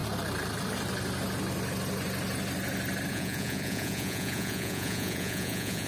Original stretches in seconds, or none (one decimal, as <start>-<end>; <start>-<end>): 0.0-3.1